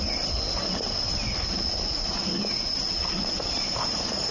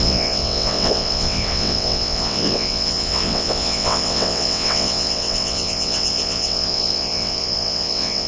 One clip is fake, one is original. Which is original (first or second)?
first